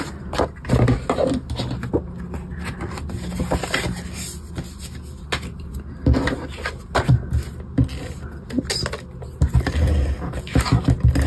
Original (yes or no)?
yes